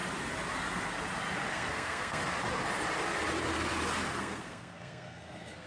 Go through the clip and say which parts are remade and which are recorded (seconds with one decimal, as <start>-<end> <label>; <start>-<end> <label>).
0.0-1.5 recorded; 1.5-2.2 remade; 2.2-4.2 recorded; 4.2-5.7 remade